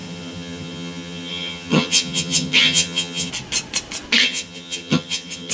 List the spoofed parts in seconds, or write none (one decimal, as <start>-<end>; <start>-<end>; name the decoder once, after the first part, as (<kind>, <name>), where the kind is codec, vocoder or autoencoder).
0.0-3.3 (vocoder, HiFi-GAN); 4.2-5.5